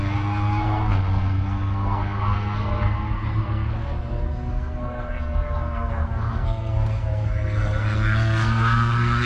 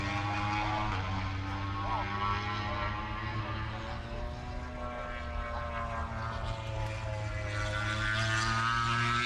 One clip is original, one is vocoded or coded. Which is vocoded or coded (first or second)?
first